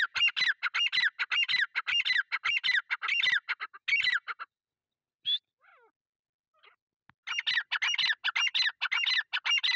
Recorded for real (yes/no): yes